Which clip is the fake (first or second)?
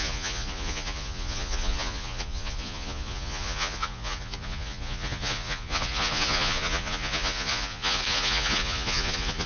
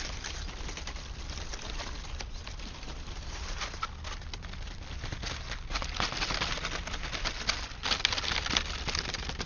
first